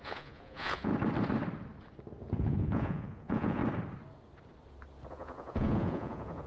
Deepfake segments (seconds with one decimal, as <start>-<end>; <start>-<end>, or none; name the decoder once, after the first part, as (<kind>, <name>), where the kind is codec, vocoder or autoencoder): 0.0-0.9 (vocoder, Vocos); 2.2-3.6; 5.1-6.5